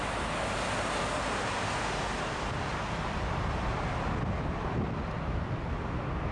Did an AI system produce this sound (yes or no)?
no